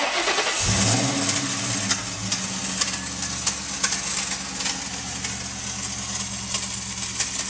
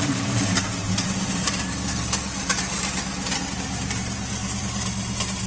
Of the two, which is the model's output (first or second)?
second